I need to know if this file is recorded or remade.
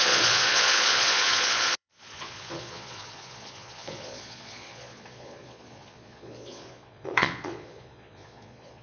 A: remade